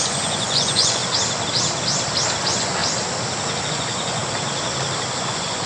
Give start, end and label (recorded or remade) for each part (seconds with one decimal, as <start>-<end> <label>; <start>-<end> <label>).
0.0-1.0 remade; 1.0-2.4 recorded; 2.4-2.8 remade; 2.8-3.7 recorded; 3.7-4.2 remade; 4.2-5.2 recorded; 5.2-5.7 remade